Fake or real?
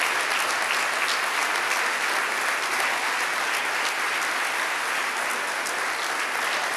real